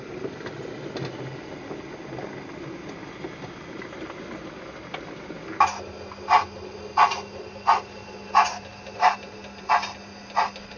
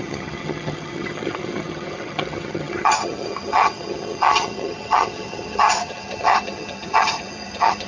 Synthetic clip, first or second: second